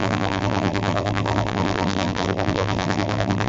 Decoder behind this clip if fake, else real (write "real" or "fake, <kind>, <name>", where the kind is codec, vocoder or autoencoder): fake, vocoder, BigVGAN v2